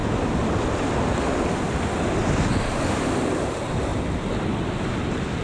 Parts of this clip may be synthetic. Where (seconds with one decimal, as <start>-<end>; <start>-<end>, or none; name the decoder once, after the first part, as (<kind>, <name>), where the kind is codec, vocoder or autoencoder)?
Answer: 3.2-3.9 (vocoder, BigVGAN v2); 4.9-5.4